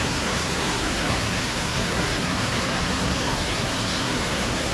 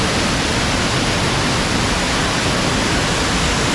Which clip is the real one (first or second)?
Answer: second